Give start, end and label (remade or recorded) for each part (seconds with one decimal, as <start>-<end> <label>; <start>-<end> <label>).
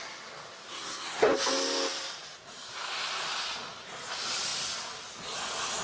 0.0-0.7 recorded; 0.7-1.3 remade; 1.3-5.8 recorded